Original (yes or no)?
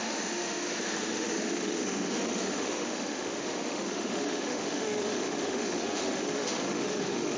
no